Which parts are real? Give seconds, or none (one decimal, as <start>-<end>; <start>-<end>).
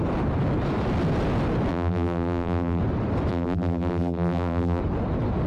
0.0-1.7; 2.8-3.3; 4.8-5.5